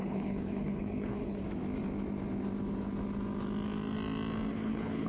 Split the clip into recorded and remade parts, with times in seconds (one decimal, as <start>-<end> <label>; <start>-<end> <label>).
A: 0.0-1.4 remade; 1.4-4.5 recorded; 4.5-5.1 remade